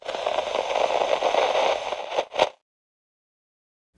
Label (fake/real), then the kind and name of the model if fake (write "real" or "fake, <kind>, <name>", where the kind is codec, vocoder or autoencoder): real